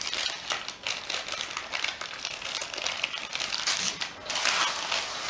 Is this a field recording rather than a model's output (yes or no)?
yes